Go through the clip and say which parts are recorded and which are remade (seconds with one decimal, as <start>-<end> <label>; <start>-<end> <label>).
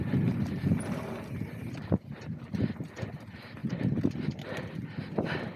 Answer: 0.0-5.6 recorded